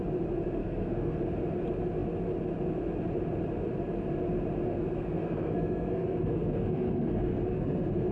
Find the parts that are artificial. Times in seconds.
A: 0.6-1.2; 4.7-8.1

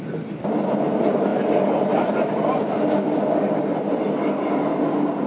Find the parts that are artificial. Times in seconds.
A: none

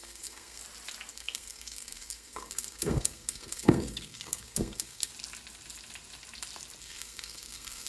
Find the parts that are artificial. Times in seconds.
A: 0.0-0.6; 1.1-5.1; 6.8-7.9

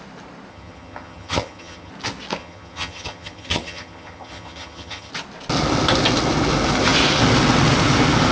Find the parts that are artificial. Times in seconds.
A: 0.5-1.9; 2.4-5.1

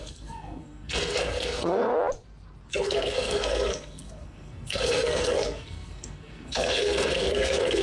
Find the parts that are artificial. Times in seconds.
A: 0.0-1.9; 2.7-7.8

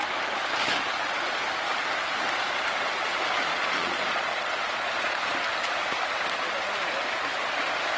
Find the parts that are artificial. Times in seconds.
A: 3.5-5.3

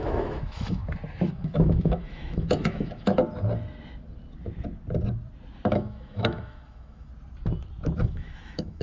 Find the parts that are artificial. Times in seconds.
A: 0.0-0.8; 1.3-3.2; 5.7-7.1; 8.0-8.8